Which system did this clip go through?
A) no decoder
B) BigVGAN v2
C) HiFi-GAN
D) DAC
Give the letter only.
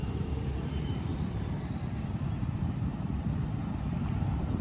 B